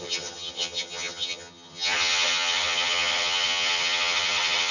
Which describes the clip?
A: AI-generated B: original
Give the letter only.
A